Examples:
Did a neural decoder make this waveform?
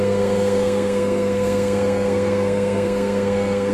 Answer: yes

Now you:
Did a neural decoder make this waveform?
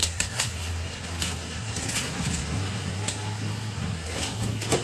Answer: yes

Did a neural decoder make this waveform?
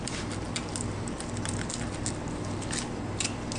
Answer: no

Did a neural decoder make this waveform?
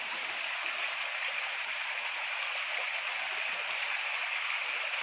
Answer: no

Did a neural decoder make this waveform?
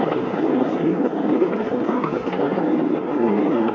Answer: yes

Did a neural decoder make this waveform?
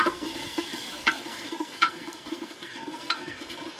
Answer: yes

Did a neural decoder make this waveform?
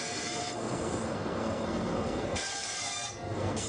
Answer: yes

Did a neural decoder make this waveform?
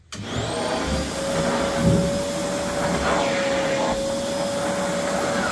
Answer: no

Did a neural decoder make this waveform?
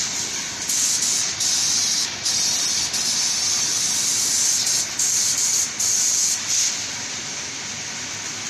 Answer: no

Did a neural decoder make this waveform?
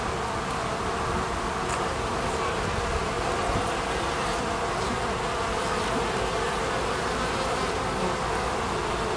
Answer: no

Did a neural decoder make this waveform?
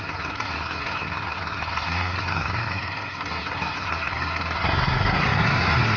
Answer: yes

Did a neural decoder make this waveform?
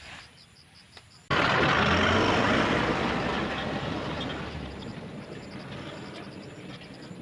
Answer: no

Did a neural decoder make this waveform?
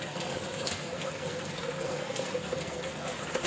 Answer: yes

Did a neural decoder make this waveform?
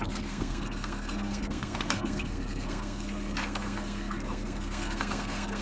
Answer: yes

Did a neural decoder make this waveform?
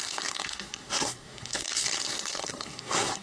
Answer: yes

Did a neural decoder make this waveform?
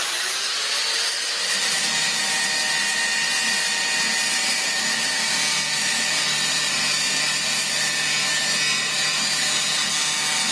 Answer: no